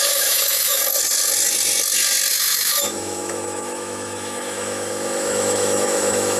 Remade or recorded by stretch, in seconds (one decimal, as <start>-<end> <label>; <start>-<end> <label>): 0.0-0.8 remade; 0.8-2.3 recorded; 2.3-6.4 remade